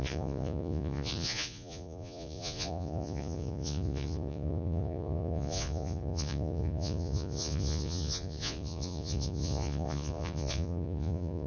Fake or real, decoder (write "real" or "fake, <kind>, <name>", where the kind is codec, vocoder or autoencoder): fake, vocoder, Vocos